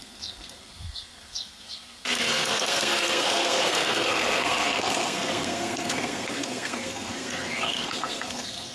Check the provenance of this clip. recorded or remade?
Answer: remade